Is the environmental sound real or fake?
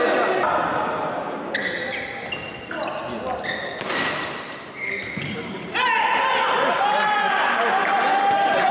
real